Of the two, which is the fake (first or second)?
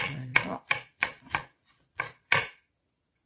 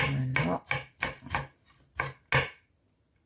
first